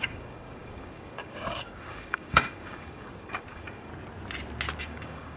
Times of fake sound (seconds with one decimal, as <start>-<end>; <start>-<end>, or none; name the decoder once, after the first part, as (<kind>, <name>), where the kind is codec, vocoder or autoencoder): 0.0-3.9 (codec, DAC); 4.8-5.4